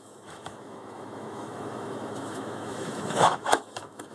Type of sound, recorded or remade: remade